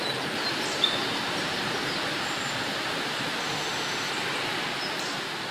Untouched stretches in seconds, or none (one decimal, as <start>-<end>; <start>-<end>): 0.0-3.4; 4.1-5.5